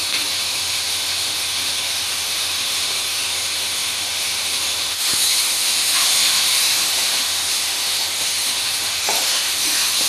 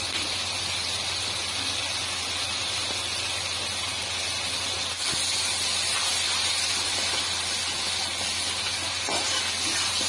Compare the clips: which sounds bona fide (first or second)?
second